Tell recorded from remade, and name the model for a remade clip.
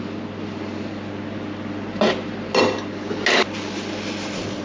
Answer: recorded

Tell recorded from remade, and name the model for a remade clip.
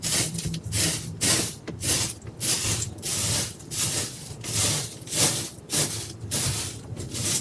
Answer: remade, vocoder, BigVGAN v2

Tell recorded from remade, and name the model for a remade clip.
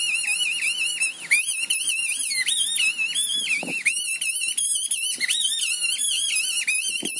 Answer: recorded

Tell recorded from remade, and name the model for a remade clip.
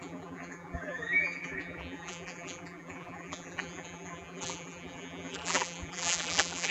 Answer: remade, vocoder, BigVGAN v2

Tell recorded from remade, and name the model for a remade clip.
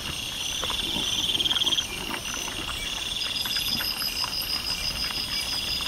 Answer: recorded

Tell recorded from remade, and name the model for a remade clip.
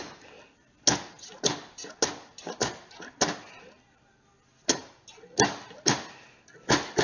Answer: recorded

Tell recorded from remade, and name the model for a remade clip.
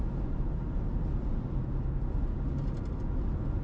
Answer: recorded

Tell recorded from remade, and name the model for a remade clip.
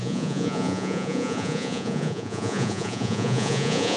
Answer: remade, vocoder, Vocos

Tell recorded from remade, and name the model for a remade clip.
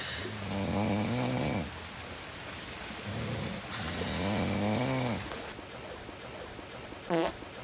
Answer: recorded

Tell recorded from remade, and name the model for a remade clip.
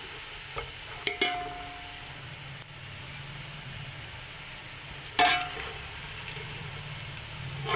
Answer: recorded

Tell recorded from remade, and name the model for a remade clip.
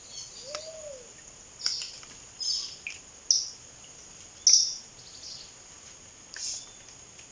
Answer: recorded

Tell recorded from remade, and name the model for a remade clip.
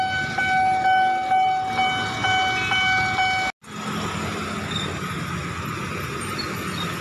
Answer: recorded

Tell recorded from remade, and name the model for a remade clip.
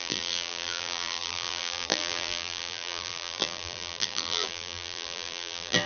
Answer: remade, vocoder, BigVGAN v2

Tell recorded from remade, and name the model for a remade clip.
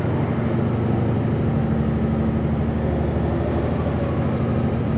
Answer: recorded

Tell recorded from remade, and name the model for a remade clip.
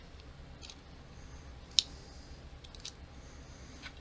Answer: recorded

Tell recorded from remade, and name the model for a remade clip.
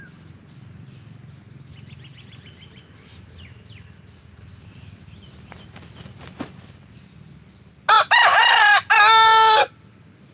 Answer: recorded